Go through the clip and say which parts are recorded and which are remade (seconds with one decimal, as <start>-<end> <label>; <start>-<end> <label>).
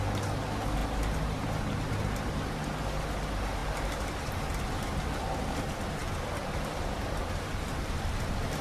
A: 0.0-8.6 recorded